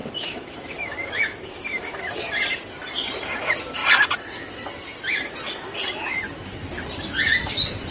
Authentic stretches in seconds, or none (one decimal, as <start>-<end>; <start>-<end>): 2.2-7.9